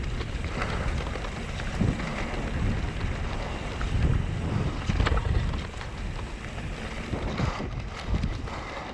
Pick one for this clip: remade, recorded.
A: recorded